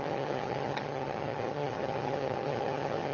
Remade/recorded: remade